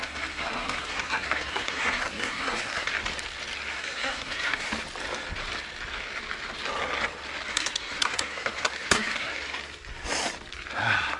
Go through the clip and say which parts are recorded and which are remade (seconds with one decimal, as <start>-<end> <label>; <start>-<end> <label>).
0.0-2.9 remade; 2.9-3.7 recorded; 3.7-4.7 remade; 4.7-7.5 recorded; 7.5-9.3 remade; 9.3-11.2 recorded